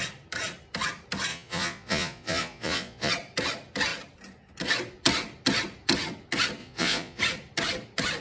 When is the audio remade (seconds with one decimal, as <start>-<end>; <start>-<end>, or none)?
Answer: 1.3-3.1; 6.6-7.2